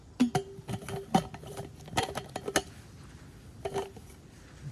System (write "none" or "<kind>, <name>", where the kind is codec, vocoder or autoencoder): none